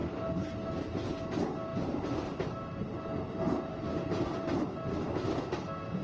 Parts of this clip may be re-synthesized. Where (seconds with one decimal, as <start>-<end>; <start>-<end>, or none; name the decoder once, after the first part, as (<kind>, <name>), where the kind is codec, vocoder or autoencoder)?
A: 1.7-3.3 (vocoder, BigVGAN v2); 3.7-4.7